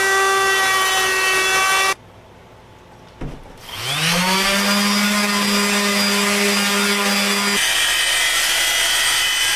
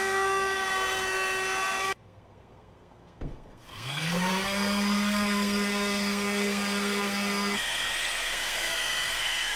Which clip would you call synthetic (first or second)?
second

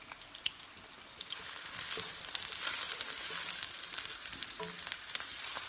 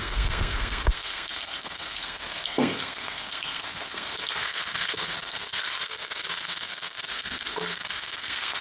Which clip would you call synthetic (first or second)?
second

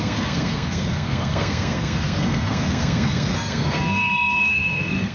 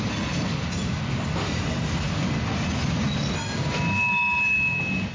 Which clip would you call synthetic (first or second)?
first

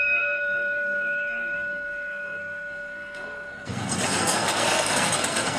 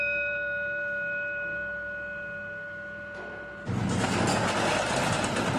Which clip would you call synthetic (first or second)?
first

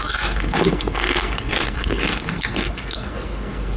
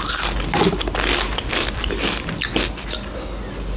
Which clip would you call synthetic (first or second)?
first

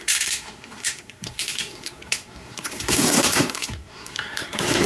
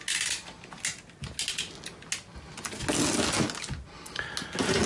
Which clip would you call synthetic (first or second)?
first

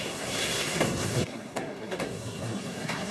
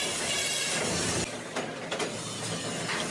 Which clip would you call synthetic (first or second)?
first